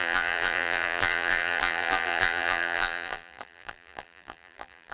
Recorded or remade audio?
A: remade